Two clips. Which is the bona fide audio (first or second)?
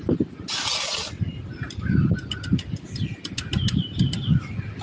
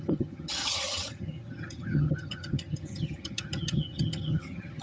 first